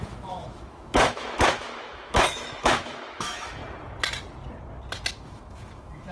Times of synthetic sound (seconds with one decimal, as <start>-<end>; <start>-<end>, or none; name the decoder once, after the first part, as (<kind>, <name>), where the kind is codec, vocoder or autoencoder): 0.0-3.6 (autoencoder, DAC-VAE); 5.1-6.1